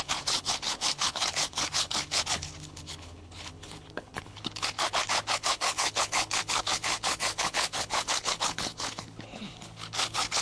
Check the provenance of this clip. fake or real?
fake